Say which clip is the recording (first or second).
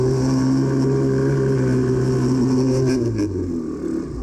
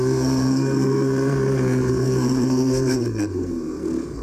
first